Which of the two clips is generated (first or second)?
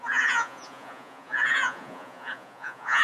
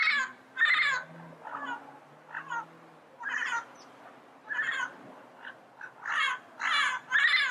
first